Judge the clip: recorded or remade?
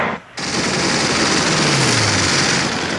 recorded